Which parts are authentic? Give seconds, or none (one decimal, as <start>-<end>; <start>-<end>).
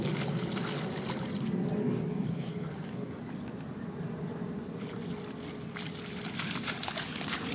0.0-1.8; 3.2-7.5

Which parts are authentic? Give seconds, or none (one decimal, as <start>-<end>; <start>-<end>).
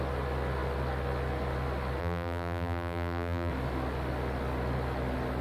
0.0-2.0; 3.5-5.4